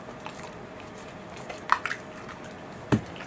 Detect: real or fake real